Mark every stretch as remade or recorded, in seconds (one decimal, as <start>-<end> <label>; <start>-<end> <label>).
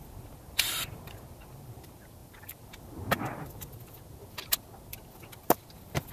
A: 0.0-6.1 recorded